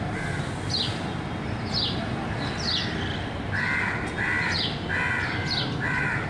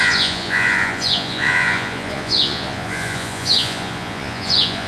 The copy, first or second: second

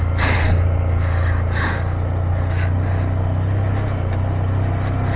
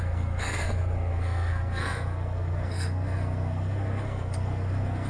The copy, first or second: second